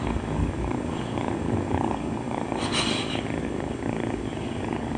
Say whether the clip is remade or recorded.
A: remade